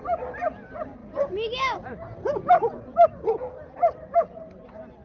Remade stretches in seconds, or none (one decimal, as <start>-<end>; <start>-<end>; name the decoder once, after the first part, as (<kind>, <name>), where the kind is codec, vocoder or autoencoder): none